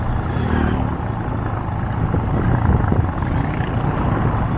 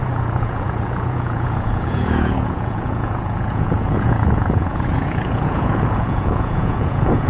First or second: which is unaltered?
first